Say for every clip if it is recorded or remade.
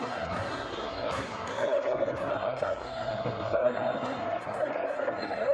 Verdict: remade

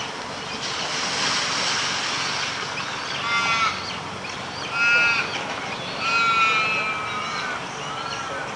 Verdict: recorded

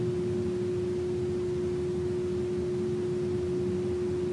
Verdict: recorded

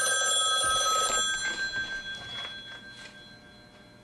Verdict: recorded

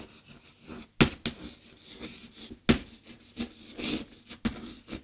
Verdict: recorded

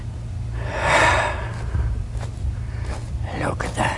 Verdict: recorded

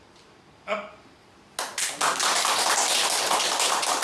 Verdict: recorded